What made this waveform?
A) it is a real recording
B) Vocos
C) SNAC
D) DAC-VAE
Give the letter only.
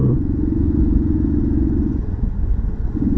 B